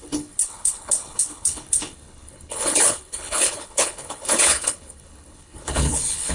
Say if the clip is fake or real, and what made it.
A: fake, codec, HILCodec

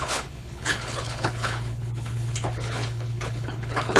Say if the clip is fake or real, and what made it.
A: fake, codec, HILCodec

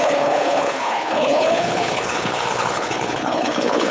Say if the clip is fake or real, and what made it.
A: fake, codec, HILCodec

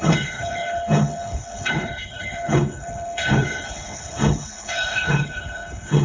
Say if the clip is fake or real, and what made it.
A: fake, codec, HILCodec